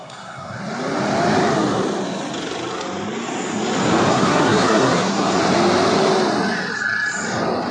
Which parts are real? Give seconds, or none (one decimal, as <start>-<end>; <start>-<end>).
0.6-4.1; 5.4-7.7